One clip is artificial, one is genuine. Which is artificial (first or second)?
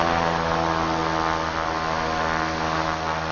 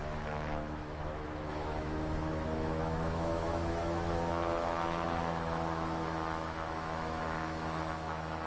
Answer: second